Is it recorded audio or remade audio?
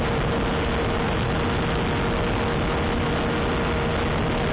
recorded